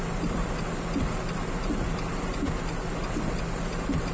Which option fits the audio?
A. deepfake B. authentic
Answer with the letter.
B